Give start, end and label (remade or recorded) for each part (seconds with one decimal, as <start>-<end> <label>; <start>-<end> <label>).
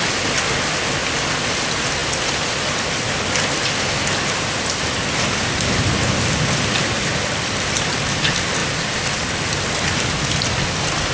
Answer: 0.0-11.1 recorded